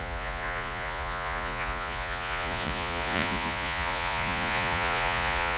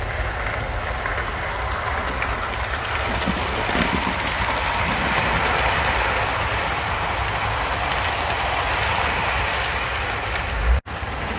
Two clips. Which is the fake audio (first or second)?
first